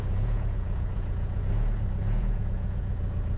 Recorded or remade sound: remade